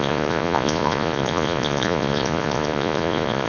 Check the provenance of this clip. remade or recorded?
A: remade